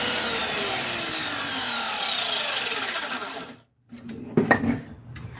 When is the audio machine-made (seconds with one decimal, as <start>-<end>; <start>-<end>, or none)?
0.0-5.4